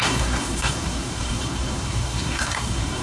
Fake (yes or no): yes